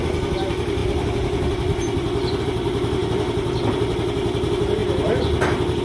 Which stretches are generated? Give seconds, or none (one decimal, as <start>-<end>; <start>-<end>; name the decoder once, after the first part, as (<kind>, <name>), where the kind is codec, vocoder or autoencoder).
none